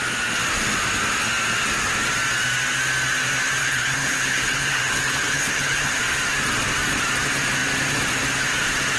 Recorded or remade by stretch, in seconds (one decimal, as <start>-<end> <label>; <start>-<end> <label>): 0.0-3.6 recorded; 3.6-6.0 remade; 6.0-9.0 recorded